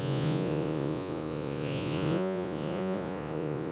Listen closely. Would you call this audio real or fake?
fake